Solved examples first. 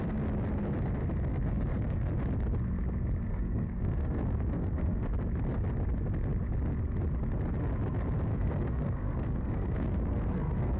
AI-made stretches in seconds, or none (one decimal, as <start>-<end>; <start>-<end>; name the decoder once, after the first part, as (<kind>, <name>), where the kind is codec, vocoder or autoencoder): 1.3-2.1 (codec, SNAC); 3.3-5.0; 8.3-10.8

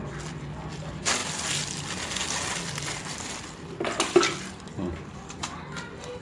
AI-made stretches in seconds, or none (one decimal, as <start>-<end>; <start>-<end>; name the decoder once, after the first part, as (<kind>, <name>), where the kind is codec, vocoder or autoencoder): none

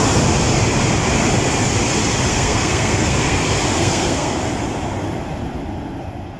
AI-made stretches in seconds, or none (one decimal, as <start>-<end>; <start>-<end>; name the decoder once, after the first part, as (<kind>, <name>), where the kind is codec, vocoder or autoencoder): 2.3-3.4 (codec, SNAC); 3.8-4.4

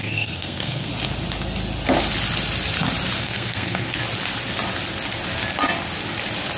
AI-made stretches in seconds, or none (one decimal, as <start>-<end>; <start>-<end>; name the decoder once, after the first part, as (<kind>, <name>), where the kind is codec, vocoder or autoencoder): 0.0-0.9 (codec, SNAC); 3.2-4.0

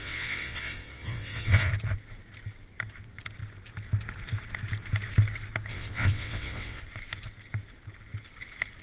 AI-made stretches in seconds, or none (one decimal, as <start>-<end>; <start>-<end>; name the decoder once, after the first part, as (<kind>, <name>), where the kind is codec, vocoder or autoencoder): 0.0-1.7 (vocoder, WaveNeXt); 5.7-6.8

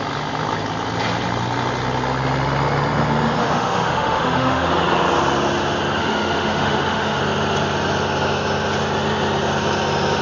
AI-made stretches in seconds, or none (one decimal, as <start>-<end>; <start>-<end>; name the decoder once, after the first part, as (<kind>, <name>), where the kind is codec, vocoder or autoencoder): 3.4-4.7 (autoencoder, DAC-VAE); 6.0-7.2

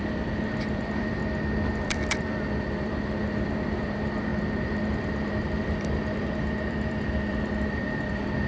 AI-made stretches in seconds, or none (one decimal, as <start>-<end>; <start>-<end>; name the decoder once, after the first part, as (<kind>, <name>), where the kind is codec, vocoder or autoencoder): 0.0-1.2 (vocoder, BigVGAN v2); 1.7-8.5